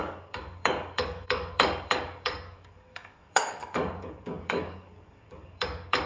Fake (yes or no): yes